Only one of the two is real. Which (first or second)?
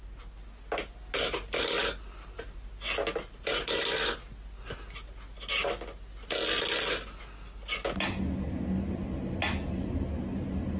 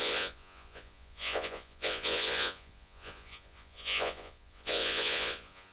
first